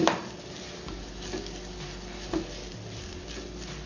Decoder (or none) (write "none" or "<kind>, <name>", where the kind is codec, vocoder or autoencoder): none